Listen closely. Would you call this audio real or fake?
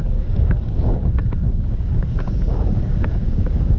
fake